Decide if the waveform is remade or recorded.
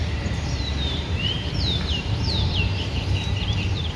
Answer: remade